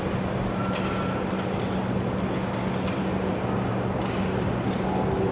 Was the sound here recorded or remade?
recorded